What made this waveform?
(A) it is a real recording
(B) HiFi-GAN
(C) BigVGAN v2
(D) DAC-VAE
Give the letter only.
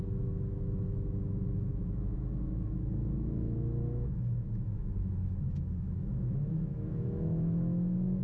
D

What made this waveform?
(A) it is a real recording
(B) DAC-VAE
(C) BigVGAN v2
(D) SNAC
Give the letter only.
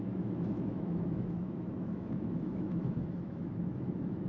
B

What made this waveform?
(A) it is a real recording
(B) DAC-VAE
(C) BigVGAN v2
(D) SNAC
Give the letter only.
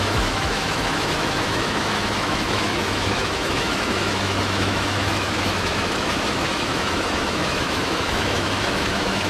B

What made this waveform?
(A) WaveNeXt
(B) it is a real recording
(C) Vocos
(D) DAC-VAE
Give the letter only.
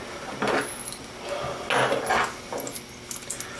B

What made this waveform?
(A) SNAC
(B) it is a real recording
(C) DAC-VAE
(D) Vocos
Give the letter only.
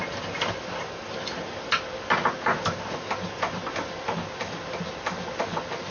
B